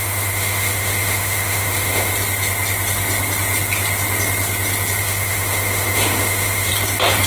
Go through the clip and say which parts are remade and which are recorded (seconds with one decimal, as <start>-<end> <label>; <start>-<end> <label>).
0.0-2.1 remade; 2.1-5.0 recorded; 5.0-6.7 remade; 6.7-7.3 recorded